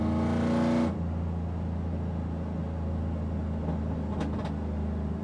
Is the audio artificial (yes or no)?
no